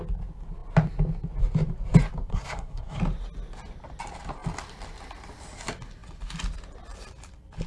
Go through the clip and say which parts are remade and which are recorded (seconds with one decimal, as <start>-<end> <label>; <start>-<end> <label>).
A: 0.0-2.3 recorded; 2.3-3.0 remade; 3.0-7.7 recorded